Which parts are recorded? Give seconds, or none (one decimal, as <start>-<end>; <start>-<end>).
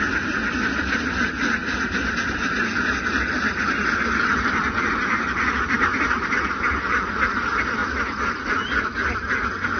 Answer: 0.0-9.8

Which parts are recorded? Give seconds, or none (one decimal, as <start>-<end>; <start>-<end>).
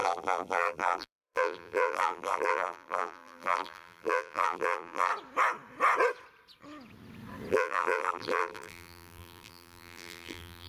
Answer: 5.1-7.5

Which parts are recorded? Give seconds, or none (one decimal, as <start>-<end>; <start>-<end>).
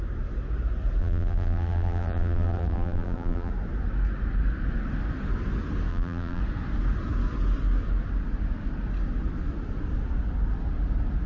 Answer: 0.0-1.0; 3.5-5.9; 6.4-11.3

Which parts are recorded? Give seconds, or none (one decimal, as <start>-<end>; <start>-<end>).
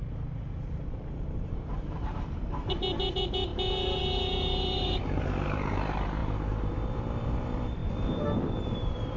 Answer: 7.8-8.7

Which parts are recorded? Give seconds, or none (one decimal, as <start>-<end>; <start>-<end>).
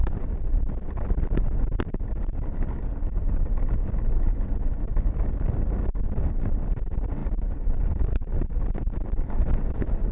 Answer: 0.0-10.1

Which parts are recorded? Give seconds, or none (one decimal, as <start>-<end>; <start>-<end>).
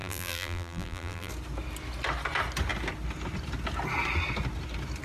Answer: 1.3-5.0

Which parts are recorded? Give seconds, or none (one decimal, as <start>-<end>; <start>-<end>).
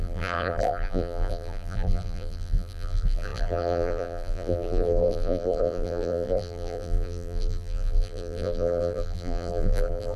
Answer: none